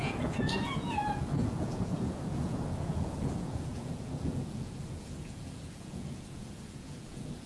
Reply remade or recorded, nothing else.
remade